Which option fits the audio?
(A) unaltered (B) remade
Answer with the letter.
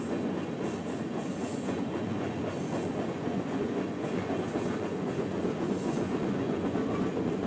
B